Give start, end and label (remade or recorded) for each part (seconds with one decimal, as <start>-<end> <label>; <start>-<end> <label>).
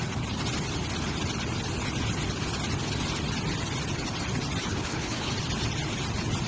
0.0-4.7 recorded; 4.7-5.3 remade; 5.3-6.5 recorded